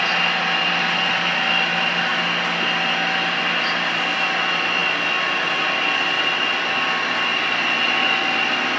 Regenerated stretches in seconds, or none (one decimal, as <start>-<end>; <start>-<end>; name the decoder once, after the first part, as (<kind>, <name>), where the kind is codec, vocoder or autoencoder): none

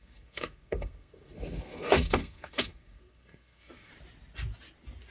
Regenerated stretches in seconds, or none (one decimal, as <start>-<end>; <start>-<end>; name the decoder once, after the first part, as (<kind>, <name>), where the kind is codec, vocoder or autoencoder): 0.0-3.9 (codec, SNAC)

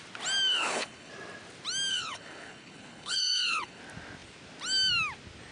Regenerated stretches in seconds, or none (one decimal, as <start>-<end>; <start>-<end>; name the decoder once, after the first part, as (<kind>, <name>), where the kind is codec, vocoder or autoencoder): 0.5-1.1 (codec, HILCodec); 1.9-3.8

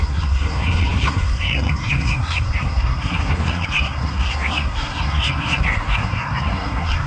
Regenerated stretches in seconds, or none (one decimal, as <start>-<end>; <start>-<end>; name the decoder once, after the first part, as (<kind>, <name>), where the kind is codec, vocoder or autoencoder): 0.0-7.1 (codec, SNAC)